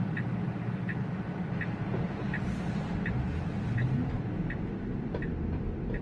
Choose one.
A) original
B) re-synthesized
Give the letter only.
A